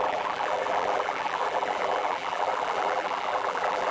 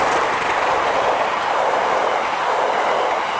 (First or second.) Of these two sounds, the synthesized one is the first